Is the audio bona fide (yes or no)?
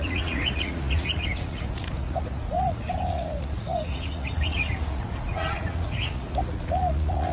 no